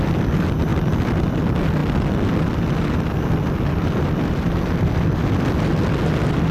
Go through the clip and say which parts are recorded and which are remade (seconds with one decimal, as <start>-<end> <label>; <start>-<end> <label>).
0.0-6.5 recorded